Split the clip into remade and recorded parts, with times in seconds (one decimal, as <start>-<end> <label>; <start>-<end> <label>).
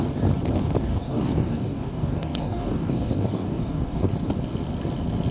0.0-0.9 recorded; 0.9-4.1 remade; 4.1-5.3 recorded